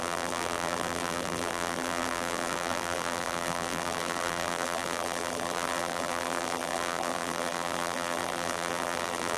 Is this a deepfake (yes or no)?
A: yes